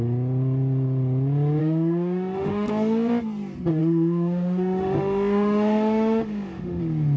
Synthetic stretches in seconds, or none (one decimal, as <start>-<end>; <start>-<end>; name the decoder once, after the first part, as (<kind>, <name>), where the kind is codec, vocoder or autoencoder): 1.6-2.7 (autoencoder, DAC-VAE); 3.8-6.8